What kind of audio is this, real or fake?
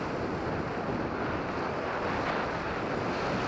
real